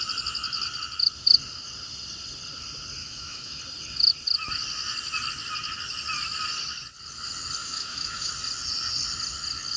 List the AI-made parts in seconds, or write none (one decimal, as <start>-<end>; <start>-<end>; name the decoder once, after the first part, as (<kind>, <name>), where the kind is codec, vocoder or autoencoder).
3.0-3.6 (autoencoder, DAC-VAE); 7.6-8.3